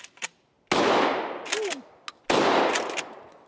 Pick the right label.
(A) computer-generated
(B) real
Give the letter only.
B